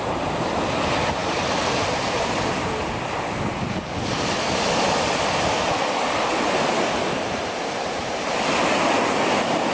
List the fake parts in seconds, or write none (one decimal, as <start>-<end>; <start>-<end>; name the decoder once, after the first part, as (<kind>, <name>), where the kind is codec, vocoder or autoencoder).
none